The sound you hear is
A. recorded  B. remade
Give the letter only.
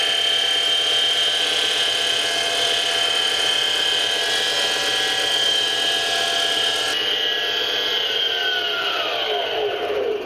A